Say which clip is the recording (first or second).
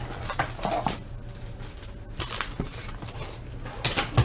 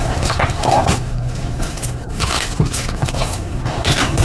first